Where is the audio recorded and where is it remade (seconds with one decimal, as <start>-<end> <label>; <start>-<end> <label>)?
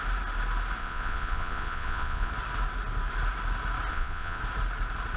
0.0-0.8 recorded; 0.8-2.3 remade; 2.3-3.9 recorded; 3.9-4.4 remade; 4.4-5.2 recorded